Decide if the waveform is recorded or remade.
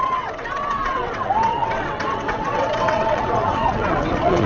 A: remade